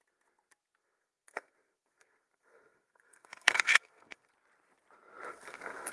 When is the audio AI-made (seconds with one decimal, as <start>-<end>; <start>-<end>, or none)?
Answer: 0.8-4.3; 5.3-5.9